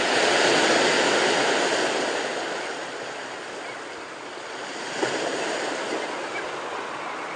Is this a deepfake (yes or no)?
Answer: no